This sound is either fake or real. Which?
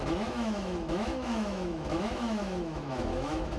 fake